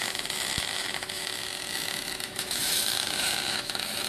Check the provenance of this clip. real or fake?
fake